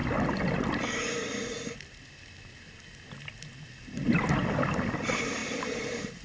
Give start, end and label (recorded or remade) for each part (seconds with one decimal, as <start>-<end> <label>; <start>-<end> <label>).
0.0-5.4 recorded; 5.4-6.2 remade